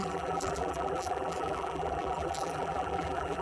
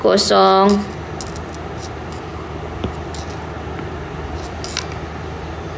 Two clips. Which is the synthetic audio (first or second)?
first